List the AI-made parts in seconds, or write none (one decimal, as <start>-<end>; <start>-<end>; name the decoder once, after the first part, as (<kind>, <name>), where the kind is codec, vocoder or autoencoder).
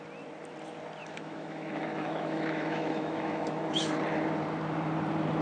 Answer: 1.0-3.8 (autoencoder, DAC-VAE)